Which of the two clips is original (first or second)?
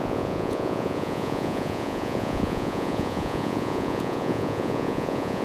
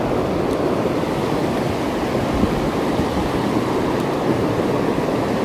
second